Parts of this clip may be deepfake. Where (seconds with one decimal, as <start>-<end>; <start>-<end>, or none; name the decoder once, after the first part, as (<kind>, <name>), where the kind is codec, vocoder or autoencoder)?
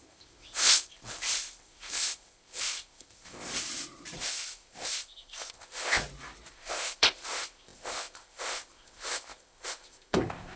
0.0-3.5 (codec, ZipCodec); 4.2-6.0; 6.5-10.6